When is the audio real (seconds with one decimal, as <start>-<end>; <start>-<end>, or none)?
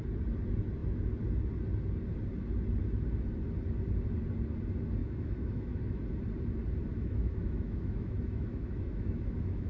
0.0-5.0; 6.0-6.9